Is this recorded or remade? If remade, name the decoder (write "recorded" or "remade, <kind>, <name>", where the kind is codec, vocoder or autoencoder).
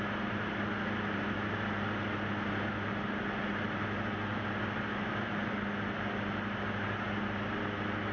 recorded